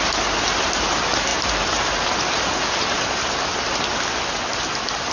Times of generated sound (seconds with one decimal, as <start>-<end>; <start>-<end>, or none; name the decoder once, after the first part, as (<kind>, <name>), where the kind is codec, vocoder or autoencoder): none